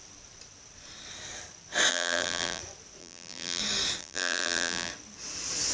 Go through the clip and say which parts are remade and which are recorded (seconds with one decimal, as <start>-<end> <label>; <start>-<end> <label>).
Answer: 0.0-1.9 recorded; 1.9-2.6 remade; 2.6-3.0 recorded; 3.0-3.6 remade; 3.6-4.0 recorded; 4.0-4.9 remade; 4.9-5.7 recorded